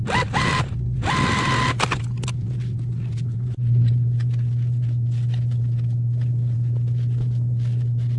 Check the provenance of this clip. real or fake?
real